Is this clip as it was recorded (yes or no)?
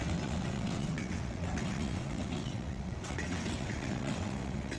no